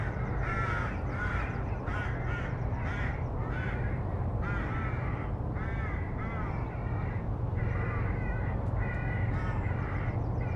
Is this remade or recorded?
recorded